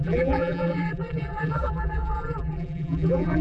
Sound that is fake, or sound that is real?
fake